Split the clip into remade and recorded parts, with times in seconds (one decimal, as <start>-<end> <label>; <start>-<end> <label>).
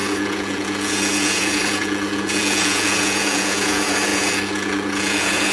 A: 0.0-5.5 remade